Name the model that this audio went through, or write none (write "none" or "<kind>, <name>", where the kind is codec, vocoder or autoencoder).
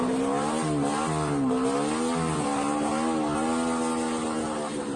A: none